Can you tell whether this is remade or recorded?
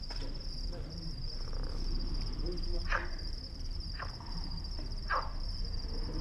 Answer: remade